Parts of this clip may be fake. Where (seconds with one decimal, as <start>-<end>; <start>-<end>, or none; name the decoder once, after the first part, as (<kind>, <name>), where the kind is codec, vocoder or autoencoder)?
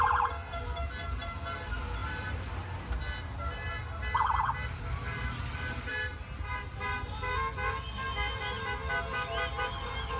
none